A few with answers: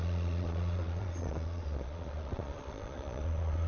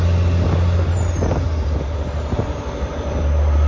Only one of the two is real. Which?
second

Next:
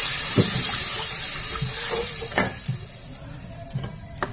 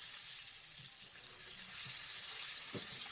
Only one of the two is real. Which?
second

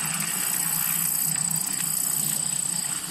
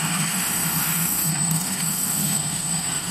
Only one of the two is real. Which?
first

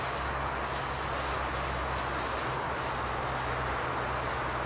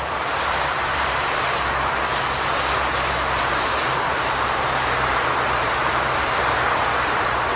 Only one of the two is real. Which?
first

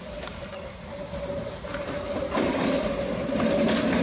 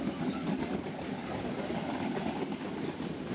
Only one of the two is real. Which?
first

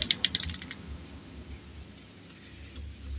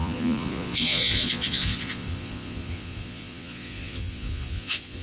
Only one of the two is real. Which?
first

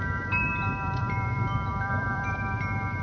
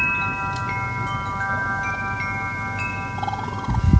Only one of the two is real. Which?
second